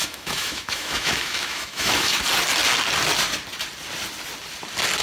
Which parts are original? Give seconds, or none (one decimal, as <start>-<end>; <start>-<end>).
2.2-5.0